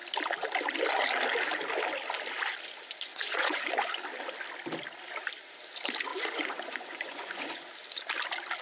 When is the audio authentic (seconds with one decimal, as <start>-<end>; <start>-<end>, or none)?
0.0-3.1; 3.9-6.1; 7.7-8.6